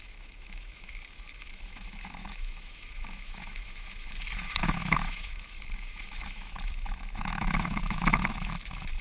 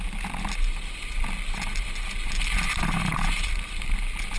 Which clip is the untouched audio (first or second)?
second